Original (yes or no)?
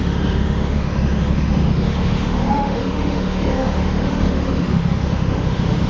no